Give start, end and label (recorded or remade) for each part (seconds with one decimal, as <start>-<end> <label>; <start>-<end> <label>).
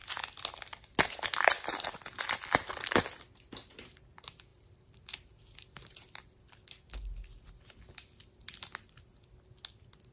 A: 0.0-10.1 recorded